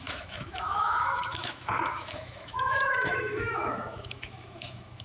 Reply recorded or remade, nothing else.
remade